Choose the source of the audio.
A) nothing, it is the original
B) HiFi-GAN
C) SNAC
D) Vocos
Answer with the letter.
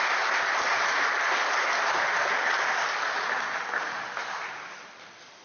A